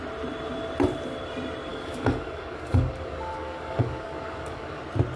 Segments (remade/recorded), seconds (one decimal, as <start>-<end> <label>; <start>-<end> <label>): 0.0-1.7 recorded; 1.7-4.8 remade; 4.8-5.2 recorded